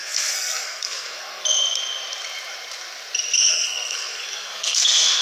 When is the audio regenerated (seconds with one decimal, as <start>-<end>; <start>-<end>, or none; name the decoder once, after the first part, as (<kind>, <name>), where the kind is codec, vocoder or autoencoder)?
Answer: 0.0-1.4 (codec, SNAC); 3.5-5.2